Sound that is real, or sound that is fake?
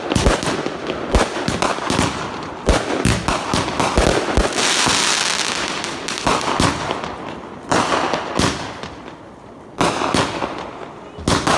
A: real